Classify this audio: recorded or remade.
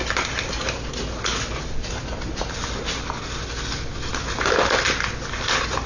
recorded